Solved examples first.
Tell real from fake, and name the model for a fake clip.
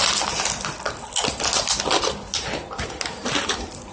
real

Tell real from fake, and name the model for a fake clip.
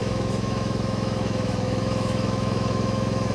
fake, autoencoder, DAC-VAE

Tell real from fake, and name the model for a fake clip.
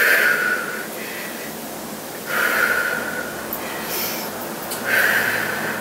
real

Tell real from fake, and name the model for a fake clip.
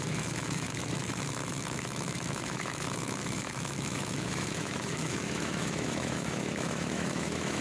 fake, autoencoder, DAC-VAE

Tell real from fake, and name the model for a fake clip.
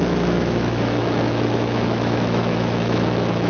fake, autoencoder, DAC-VAE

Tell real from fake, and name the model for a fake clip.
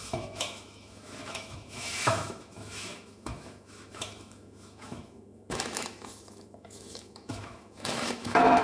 fake, autoencoder, DAC-VAE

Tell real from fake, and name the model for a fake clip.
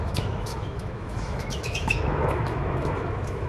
fake, autoencoder, DAC-VAE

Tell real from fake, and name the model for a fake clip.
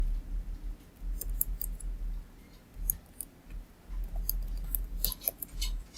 real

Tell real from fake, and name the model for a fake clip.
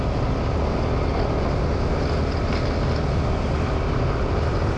real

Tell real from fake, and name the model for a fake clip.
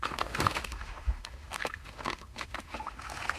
fake, autoencoder, DAC-VAE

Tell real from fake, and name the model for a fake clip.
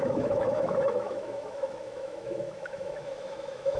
fake, autoencoder, DAC-VAE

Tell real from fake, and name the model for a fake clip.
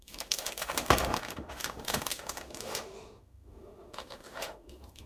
fake, autoencoder, DAC-VAE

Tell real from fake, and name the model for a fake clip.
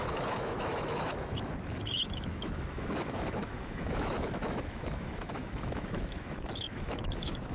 fake, autoencoder, DAC-VAE